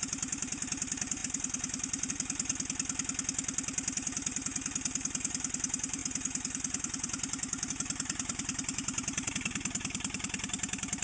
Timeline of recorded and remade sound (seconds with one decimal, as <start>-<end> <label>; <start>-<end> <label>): 0.0-2.5 remade; 2.5-3.9 recorded; 3.9-11.0 remade